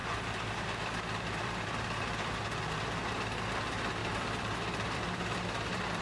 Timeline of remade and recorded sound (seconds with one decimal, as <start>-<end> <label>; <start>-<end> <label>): 0.0-2.4 remade; 2.4-4.0 recorded; 4.0-6.0 remade